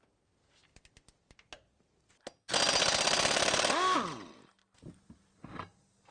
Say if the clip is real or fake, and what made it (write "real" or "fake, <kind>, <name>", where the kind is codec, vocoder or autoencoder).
real